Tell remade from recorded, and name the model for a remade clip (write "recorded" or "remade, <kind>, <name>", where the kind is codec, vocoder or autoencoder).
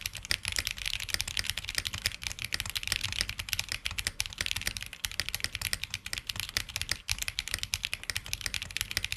recorded